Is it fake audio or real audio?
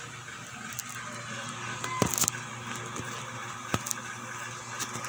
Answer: real